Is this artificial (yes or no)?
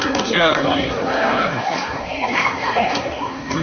yes